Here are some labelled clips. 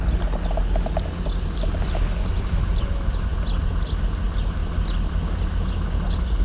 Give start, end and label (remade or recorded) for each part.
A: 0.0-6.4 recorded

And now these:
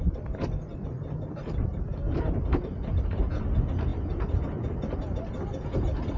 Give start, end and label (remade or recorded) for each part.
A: 0.0-6.2 recorded

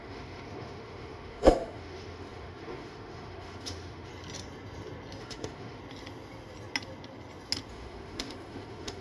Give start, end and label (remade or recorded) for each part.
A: 0.0-4.1 remade; 4.1-5.2 recorded; 5.2-5.8 remade; 5.8-7.7 recorded; 7.7-9.0 remade

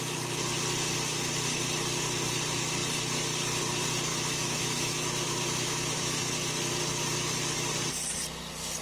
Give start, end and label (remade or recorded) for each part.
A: 0.0-4.1 recorded; 4.1-6.2 remade; 6.2-8.8 recorded

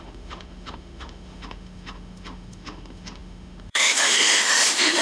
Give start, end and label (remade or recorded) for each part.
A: 0.0-5.0 remade